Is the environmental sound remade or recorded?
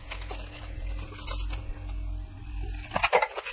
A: recorded